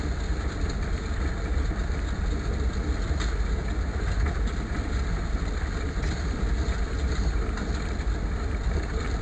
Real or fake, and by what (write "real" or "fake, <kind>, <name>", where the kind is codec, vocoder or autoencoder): real